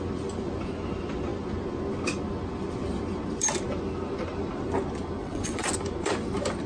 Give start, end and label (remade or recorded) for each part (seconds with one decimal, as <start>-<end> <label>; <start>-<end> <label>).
0.0-5.2 recorded; 5.2-5.7 remade; 5.7-6.7 recorded